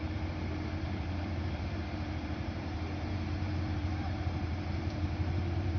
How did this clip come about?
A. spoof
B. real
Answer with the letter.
A